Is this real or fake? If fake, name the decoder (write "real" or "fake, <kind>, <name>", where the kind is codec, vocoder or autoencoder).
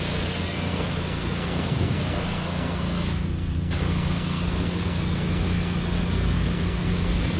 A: fake, codec, SNAC